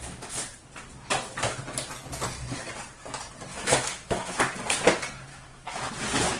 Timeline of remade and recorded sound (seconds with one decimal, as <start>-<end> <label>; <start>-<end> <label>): 0.0-3.5 recorded; 3.5-4.4 remade; 4.4-5.3 recorded; 5.3-5.9 remade; 5.9-6.4 recorded